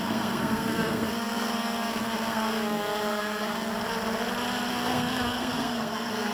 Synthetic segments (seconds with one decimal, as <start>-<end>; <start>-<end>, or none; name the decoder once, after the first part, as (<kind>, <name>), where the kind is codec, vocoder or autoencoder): 0.0-3.7 (codec, SNAC); 4.7-6.3